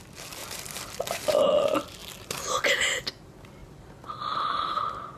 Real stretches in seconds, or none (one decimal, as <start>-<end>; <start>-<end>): 0.0-0.4; 1.1-3.6; 4.6-5.2